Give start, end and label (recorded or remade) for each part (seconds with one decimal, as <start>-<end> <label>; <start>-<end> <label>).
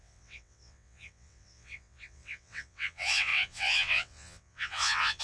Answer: 0.0-5.2 remade